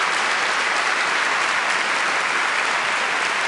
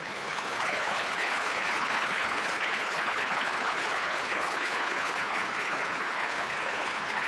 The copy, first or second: second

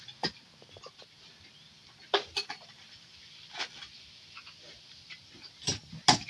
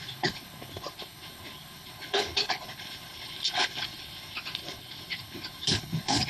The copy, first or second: second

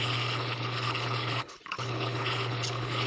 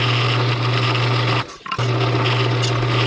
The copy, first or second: first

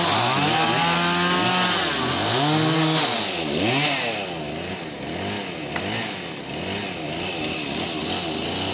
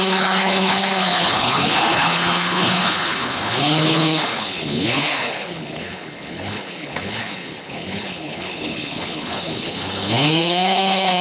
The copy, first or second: second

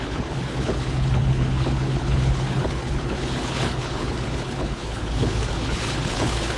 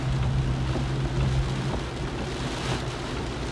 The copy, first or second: first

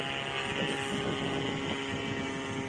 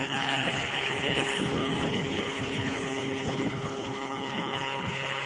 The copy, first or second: second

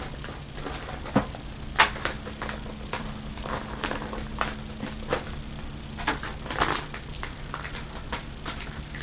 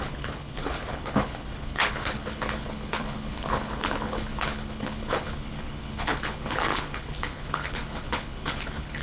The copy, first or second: second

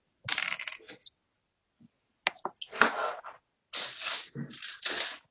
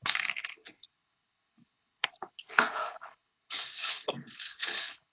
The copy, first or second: second